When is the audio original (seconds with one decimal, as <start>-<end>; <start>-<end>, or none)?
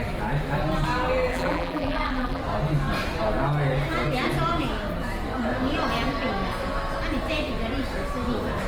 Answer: 0.0-1.3; 2.4-8.7